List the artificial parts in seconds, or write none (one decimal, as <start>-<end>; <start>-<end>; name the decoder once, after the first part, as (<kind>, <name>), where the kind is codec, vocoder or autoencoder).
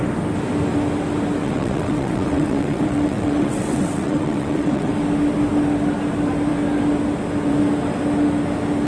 1.4-4.9 (vocoder, WaveNeXt)